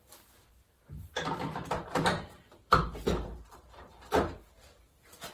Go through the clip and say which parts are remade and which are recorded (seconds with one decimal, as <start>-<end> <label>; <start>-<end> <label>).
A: 0.0-2.1 recorded; 2.1-4.1 remade; 4.1-5.3 recorded